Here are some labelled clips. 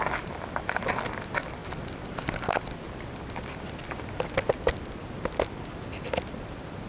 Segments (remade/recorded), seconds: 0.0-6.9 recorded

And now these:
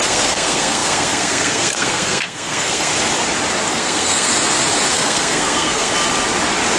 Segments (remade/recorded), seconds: 0.0-2.9 remade; 2.9-3.7 recorded; 3.7-4.3 remade; 4.3-4.9 recorded; 4.9-5.9 remade; 5.9-6.8 recorded

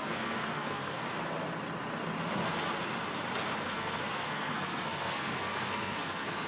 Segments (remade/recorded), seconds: 0.0-1.0 remade; 1.0-3.6 recorded; 3.6-6.5 remade

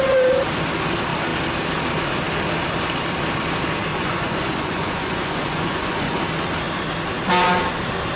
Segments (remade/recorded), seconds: 0.0-3.9 recorded; 3.9-6.2 remade; 6.2-8.2 recorded

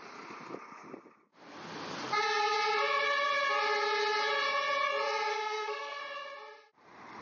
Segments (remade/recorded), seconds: 0.0-5.3 recorded; 5.3-6.0 remade; 6.0-7.2 recorded

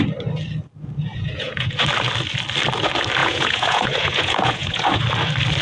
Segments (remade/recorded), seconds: 0.0-1.1 recorded; 1.1-1.7 remade; 1.7-3.2 recorded; 3.2-5.0 remade; 5.0-5.6 recorded

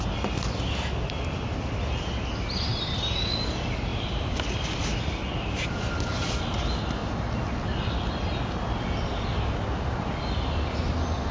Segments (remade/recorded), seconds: 0.0-11.3 recorded